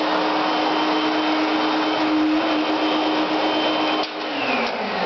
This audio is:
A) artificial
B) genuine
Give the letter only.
B